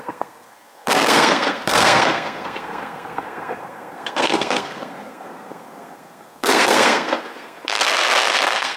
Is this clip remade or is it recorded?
remade